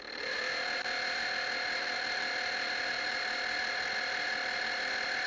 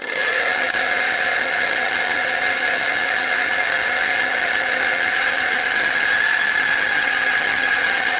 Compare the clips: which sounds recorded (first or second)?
first